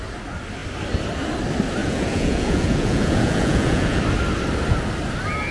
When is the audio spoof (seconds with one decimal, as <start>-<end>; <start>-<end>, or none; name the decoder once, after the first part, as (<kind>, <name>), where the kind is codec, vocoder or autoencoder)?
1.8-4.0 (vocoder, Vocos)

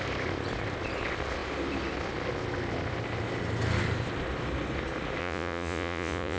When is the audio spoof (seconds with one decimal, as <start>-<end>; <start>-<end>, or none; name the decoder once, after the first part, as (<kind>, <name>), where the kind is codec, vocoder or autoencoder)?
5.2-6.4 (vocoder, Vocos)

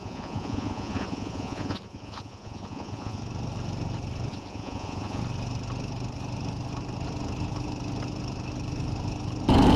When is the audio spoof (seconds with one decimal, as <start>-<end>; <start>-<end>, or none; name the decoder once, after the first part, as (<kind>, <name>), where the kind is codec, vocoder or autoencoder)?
0.0-3.2 (vocoder, Vocos); 4.3-5.2

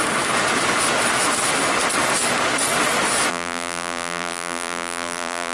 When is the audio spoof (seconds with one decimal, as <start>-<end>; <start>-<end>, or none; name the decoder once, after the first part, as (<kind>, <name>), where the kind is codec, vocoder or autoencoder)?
3.3-5.5 (vocoder, BigVGAN v2)

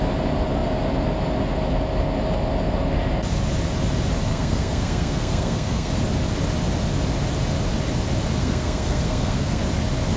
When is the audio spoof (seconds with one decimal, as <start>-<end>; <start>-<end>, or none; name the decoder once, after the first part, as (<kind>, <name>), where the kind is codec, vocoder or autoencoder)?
4.3-5.9 (codec, SNAC); 8.4-9.6